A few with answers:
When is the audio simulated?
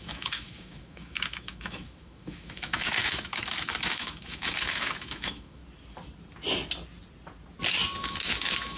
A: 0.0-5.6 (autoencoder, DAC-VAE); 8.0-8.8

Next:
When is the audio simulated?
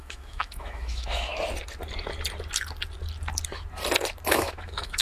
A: 0.0-1.3 (autoencoder, DAC-VAE); 4.3-5.0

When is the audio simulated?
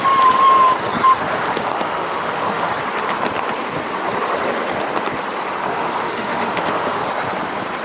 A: 1.3-2.7 (autoencoder, DAC-VAE); 5.7-7.0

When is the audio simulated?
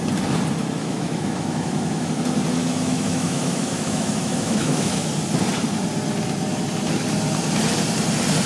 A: 0.8-2.1 (autoencoder, DAC-VAE); 2.6-5.1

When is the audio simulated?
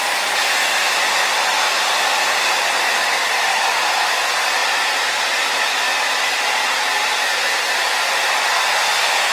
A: none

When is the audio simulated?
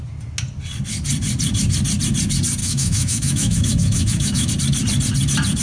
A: 2.6-4.5 (autoencoder, DAC-VAE)